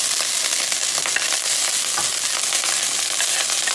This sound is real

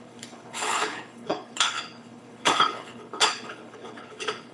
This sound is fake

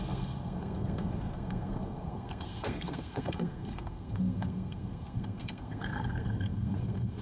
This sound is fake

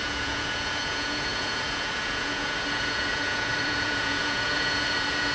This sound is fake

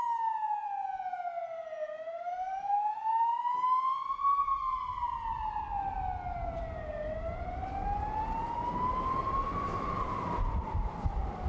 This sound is real